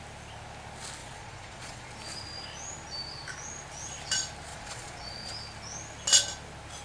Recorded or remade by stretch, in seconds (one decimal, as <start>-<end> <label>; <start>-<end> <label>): 0.0-1.0 recorded; 1.0-1.9 remade; 1.9-4.5 recorded; 4.5-5.3 remade; 5.3-6.8 recorded